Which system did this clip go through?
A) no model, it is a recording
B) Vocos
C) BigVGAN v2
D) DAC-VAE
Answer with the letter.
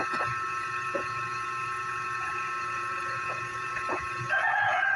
B